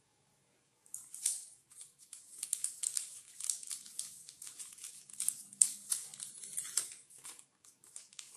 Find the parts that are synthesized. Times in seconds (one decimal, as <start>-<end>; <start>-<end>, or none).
0.0-6.1; 6.8-8.4